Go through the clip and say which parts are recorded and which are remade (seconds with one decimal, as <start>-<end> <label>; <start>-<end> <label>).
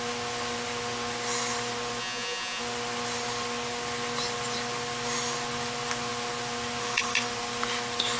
0.0-2.0 recorded; 2.0-2.6 remade; 2.6-8.2 recorded